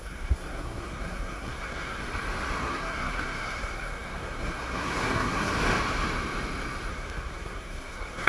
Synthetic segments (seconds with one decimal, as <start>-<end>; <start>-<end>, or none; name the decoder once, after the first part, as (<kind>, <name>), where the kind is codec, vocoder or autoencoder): 0.0-2.0 (codec, SNAC); 2.6-5.5; 6.9-8.3